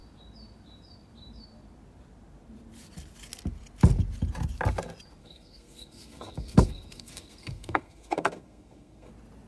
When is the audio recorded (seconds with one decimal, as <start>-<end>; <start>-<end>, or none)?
0.0-5.2; 9.1-9.5